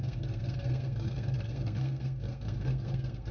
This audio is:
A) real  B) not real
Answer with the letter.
B